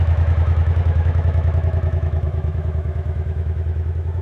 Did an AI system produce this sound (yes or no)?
yes